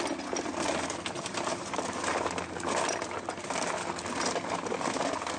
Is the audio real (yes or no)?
yes